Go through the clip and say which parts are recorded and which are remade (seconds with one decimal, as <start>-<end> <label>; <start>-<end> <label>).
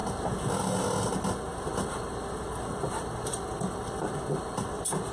0.0-5.1 recorded